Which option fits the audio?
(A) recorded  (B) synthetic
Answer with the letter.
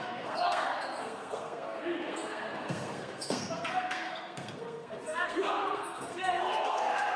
B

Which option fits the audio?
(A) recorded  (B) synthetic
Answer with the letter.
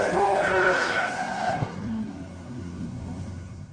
B